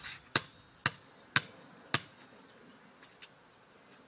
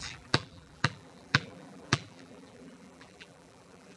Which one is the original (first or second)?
first